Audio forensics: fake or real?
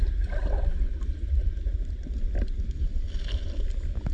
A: real